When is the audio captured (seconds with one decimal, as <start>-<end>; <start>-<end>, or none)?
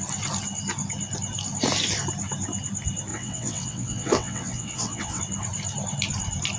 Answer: 0.0-3.1; 5.2-6.6